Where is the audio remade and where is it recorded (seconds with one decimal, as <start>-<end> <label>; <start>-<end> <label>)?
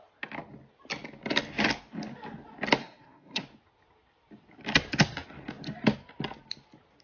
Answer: 0.0-2.8 recorded; 2.8-3.4 remade; 3.4-7.0 recorded